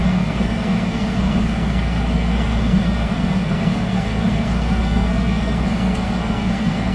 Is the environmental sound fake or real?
fake